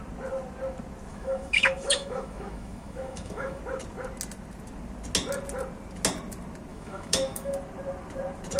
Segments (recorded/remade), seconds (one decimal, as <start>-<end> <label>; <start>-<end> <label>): 0.0-1.1 recorded; 1.1-3.6 remade; 3.6-6.7 recorded; 6.7-7.5 remade; 7.5-8.6 recorded